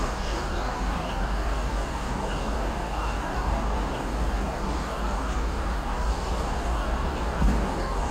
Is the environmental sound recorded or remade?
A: remade